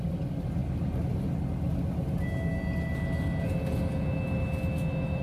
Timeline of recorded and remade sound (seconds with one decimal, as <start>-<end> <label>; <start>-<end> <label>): 0.0-5.2 recorded